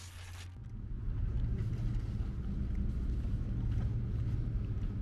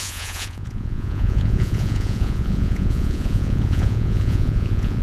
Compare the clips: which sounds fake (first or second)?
second